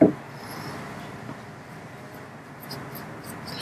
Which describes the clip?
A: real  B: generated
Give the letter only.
A